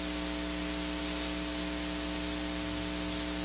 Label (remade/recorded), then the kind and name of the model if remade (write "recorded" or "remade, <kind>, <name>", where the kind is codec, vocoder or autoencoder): recorded